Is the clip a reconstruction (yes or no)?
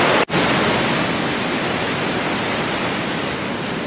no